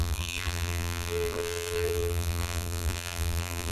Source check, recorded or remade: remade